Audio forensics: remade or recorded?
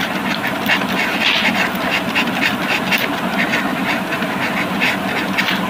recorded